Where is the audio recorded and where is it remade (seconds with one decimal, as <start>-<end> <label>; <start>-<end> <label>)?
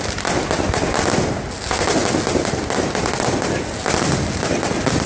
0.0-5.1 recorded